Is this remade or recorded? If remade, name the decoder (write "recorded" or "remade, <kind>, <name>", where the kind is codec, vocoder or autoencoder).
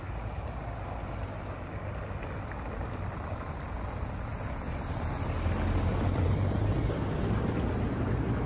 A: recorded